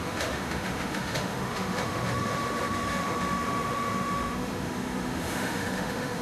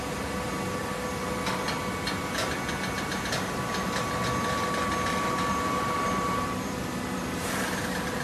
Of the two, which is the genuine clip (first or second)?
second